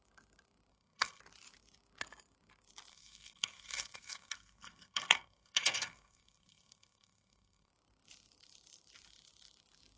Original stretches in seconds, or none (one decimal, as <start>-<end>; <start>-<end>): 0.0-0.7; 1.2-2.9; 7.7-10.0